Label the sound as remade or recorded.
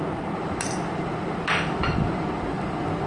remade